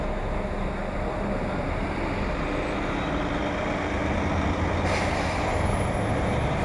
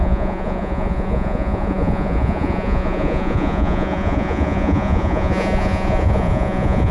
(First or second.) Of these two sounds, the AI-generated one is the second